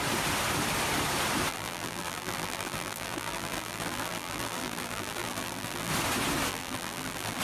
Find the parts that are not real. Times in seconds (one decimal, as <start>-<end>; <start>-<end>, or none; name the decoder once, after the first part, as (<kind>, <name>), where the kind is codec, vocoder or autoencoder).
1.5-5.9 (vocoder, BigVGAN v2); 6.5-7.4